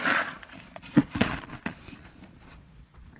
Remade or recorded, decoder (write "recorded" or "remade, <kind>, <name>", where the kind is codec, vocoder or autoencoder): remade, vocoder, Vocos